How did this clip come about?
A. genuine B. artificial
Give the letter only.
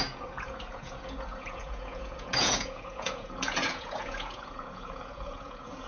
B